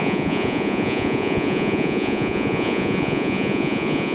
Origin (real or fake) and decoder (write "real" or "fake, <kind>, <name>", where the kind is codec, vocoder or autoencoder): fake, vocoder, Vocos